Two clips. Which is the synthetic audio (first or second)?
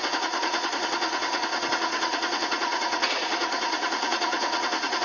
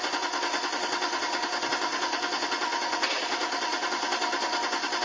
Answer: first